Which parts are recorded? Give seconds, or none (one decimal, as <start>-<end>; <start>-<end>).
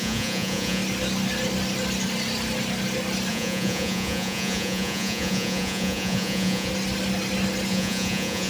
0.8-3.3; 6.7-7.7